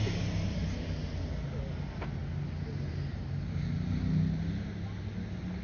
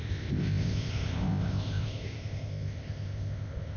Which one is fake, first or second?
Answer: second